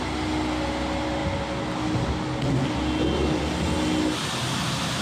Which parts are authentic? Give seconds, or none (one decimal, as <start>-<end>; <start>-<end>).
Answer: 0.0-5.0